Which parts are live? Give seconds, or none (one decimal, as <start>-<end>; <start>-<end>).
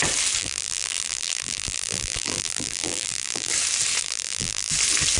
0.0-0.4; 3.5-4.0; 4.7-5.2